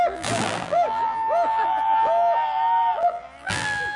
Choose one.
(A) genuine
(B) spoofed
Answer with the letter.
B